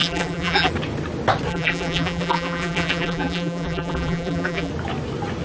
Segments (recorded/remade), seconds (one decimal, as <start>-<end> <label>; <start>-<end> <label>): 0.0-0.7 remade; 0.7-1.5 recorded; 1.5-4.7 remade; 4.7-5.4 recorded